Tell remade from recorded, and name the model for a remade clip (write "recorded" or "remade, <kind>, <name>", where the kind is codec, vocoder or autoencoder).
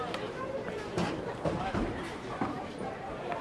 remade, vocoder, BigVGAN v2